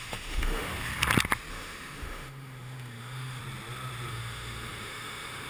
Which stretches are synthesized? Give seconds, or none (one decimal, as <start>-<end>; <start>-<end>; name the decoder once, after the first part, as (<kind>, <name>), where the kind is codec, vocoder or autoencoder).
0.0-0.9 (autoencoder, DAC-VAE); 1.5-3.4; 4.1-5.5